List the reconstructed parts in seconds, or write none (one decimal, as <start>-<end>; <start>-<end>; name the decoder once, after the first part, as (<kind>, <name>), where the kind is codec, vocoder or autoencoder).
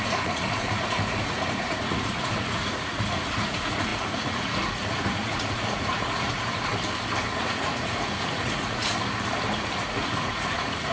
0.0-6.7 (vocoder, Vocos); 7.3-8.9; 9.5-10.9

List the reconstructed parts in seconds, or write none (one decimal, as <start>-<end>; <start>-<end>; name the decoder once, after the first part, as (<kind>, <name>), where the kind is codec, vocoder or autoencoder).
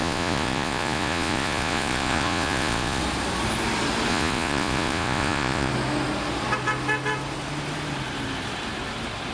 0.0-3.0 (vocoder, Vocos); 4.1-5.7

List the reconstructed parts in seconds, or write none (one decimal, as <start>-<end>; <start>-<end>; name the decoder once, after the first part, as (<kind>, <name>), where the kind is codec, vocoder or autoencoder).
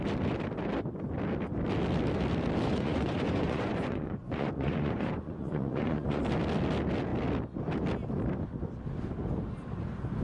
2.7-6.2 (vocoder, Vocos)